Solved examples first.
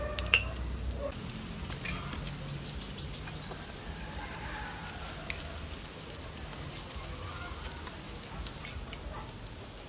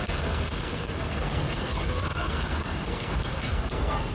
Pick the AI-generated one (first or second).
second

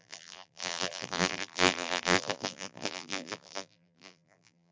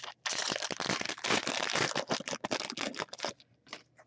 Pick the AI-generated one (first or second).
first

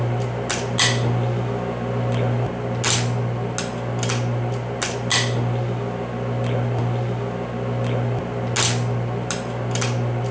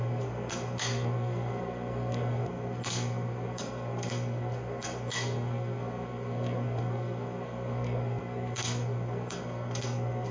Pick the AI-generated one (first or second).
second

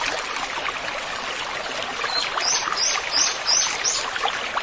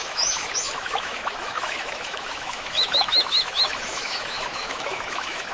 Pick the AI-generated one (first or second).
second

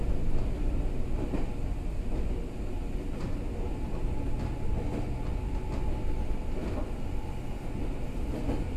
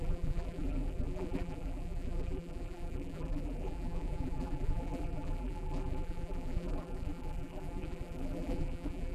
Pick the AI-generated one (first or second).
second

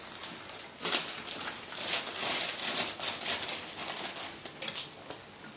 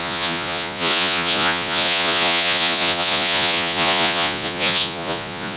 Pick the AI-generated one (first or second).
second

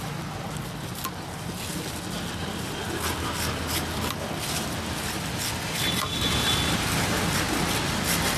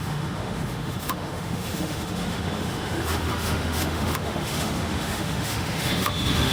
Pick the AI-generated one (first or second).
second